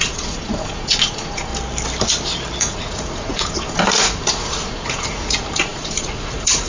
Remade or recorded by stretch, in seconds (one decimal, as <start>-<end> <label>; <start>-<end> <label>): 0.0-1.5 remade; 1.5-2.6 recorded; 2.6-6.7 remade